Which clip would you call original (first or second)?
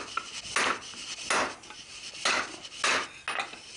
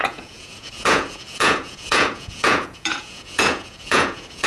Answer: first